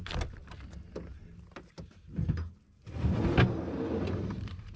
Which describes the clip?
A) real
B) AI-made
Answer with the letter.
A